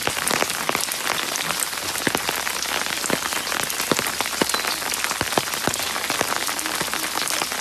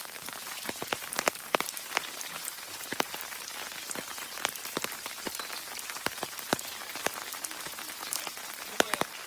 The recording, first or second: first